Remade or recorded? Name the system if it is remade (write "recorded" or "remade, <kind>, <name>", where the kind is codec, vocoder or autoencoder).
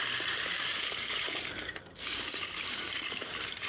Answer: remade, vocoder, BigVGAN v2